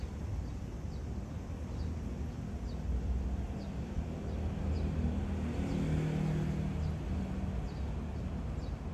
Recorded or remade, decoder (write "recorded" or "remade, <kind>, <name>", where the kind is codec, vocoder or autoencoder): recorded